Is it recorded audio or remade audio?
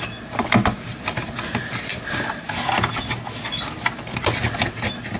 recorded